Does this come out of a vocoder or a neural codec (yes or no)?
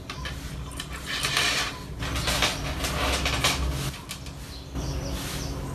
no